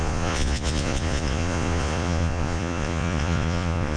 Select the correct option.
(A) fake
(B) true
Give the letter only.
A